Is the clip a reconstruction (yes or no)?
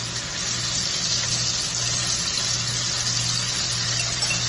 no